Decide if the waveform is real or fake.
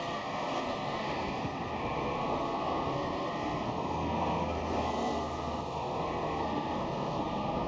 fake